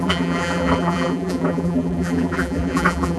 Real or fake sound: fake